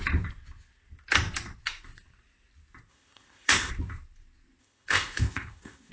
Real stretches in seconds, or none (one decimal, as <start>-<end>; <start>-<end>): 0.0-2.9; 3.7-4.6